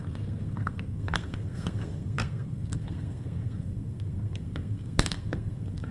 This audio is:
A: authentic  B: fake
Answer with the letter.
B